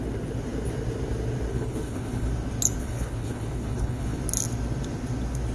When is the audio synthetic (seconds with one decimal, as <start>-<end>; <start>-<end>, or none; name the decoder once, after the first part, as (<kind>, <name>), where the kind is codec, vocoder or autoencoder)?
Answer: 1.5-2.3 (codec, HILCodec); 2.8-4.2